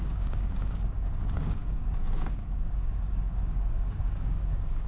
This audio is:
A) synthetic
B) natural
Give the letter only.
A